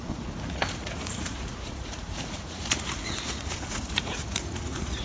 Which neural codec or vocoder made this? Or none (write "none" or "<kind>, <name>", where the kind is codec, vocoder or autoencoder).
vocoder, Vocos